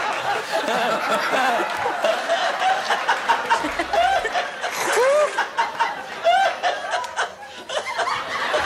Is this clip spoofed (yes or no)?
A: no